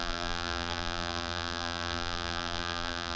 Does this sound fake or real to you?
fake